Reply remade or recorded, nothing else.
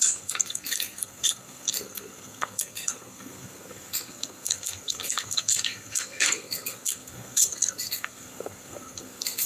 remade